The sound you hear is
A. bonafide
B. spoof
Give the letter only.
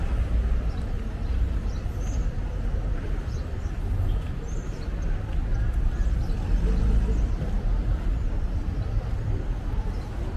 A